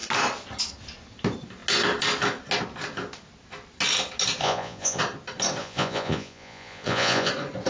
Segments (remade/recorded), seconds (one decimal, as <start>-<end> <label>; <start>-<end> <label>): 0.0-4.4 recorded; 4.4-5.0 remade; 5.0-5.6 recorded; 5.6-7.3 remade; 7.3-7.7 recorded